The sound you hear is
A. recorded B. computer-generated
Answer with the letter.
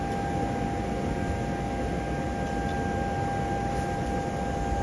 A